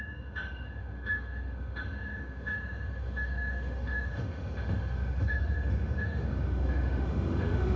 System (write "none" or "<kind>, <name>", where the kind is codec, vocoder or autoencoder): autoencoder, DAC-VAE